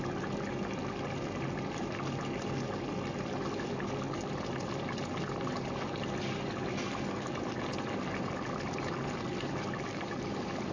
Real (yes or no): yes